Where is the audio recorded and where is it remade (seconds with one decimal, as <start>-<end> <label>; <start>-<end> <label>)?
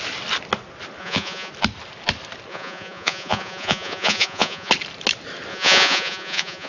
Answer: 0.0-1.0 recorded; 1.0-1.5 remade; 1.5-2.5 recorded; 2.5-4.7 remade; 4.7-5.5 recorded; 5.5-6.7 remade